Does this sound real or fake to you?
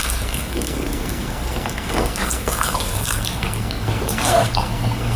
fake